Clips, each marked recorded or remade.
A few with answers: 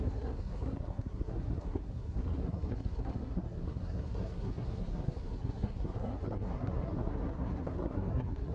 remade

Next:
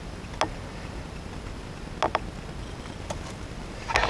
recorded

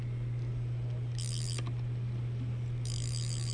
recorded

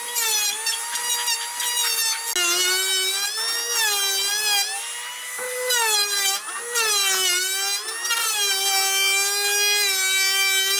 recorded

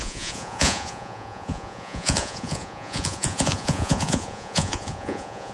remade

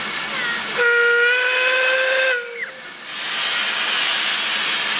recorded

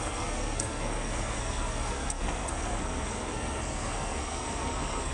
remade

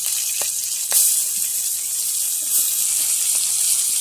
recorded